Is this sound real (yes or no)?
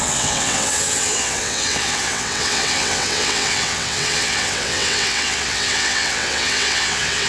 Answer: no